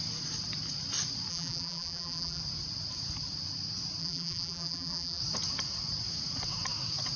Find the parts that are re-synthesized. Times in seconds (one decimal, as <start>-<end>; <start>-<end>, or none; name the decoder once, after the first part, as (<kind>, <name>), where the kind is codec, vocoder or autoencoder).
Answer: 1.3-2.4 (vocoder, BigVGAN v2); 4.0-5.2